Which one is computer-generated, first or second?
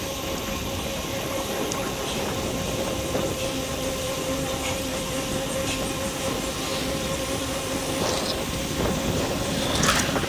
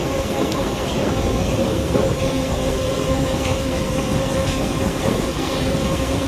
second